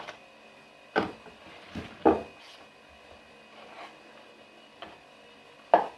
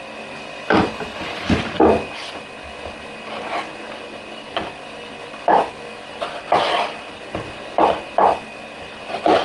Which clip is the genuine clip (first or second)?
first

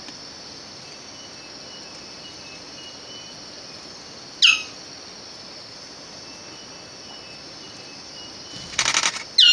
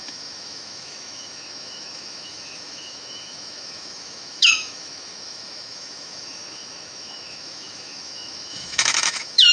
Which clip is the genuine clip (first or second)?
first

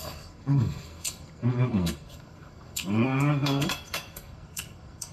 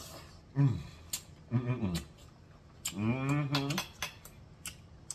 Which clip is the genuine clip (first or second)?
second